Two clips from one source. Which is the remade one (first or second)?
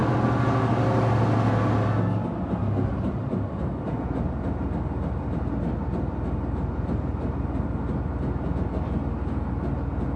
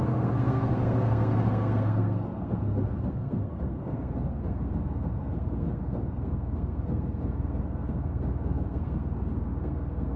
second